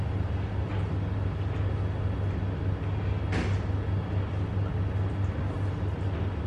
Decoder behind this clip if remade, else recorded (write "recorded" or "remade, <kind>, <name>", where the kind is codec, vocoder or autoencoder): recorded